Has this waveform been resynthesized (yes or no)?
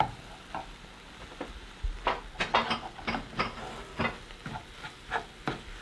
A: no